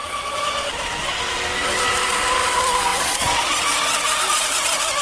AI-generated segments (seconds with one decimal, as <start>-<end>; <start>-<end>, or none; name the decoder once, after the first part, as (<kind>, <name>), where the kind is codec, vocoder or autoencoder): 0.0-0.9 (vocoder, Vocos); 2.9-3.6